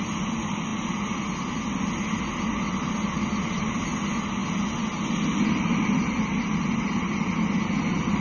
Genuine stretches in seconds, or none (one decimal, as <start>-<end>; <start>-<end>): 0.0-8.2